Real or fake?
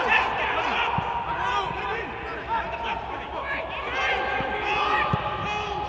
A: real